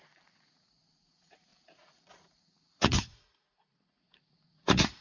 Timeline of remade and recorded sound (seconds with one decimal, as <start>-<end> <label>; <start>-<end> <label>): 0.0-5.0 remade